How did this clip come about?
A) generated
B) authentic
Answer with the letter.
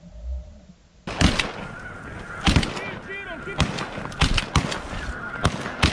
B